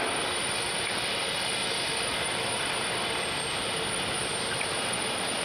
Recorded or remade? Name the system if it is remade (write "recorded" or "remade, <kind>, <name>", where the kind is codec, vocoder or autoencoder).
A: remade, vocoder, BigVGAN v2